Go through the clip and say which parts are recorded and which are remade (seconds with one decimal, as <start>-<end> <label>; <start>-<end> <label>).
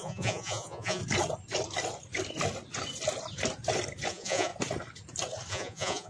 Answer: 0.0-1.0 remade; 1.0-4.1 recorded; 4.1-4.5 remade; 4.5-5.5 recorded; 5.5-6.1 remade